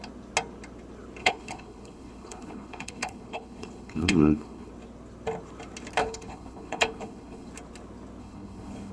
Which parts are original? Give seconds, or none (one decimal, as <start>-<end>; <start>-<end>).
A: 0.0-1.2; 4.7-6.0; 7.5-8.2